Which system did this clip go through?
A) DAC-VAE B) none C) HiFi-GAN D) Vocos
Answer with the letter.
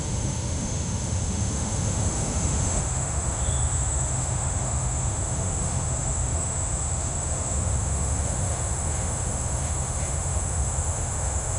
A